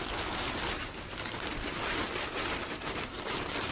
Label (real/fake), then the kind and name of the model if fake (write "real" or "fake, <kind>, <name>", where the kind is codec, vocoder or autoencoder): real